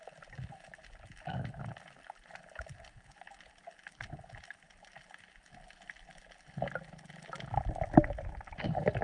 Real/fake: real